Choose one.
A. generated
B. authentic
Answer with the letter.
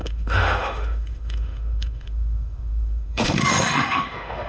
A